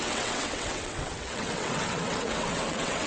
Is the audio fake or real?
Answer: fake